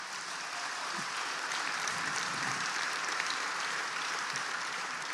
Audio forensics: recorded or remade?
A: remade